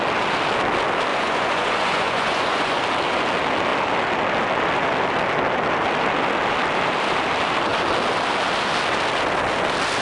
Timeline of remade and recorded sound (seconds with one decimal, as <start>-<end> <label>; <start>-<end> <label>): 0.0-1.1 recorded; 1.1-2.8 remade; 2.8-10.0 recorded